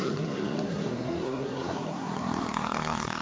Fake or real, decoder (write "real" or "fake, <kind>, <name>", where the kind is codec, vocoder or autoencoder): fake, codec, SNAC